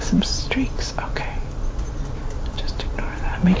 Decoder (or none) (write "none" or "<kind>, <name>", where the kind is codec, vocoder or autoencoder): none